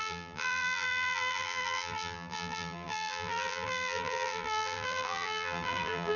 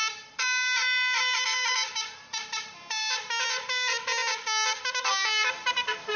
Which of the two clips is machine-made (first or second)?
first